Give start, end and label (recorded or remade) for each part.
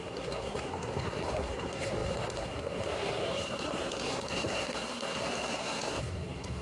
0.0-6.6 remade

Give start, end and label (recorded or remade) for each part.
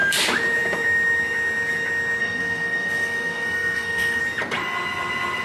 0.0-2.2 recorded; 2.2-4.2 remade; 4.2-5.4 recorded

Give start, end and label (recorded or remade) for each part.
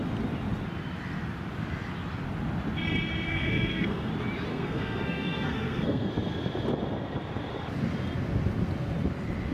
0.0-3.3 recorded; 3.3-4.1 remade; 4.1-4.5 recorded; 4.5-6.1 remade; 6.1-9.5 recorded